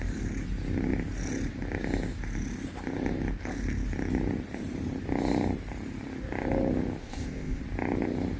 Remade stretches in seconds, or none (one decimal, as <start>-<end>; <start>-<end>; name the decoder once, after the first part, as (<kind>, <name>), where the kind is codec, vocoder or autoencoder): 7.0-7.6 (codec, ZipCodec)